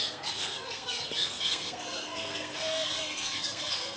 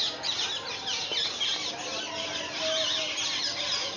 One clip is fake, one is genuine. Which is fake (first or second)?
first